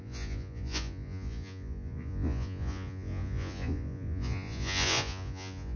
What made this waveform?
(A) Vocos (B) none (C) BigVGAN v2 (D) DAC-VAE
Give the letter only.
A